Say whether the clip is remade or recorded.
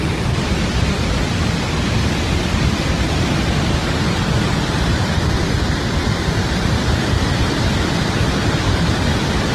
recorded